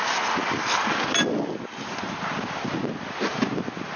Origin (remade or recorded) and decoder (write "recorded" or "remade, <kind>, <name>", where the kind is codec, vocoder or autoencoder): recorded